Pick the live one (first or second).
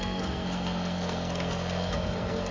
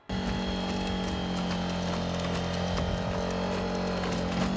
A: second